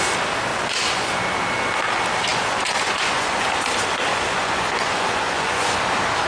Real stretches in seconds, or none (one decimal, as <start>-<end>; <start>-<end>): 0.0-0.5; 1.2-2.3; 3.5-4.1; 5.8-6.3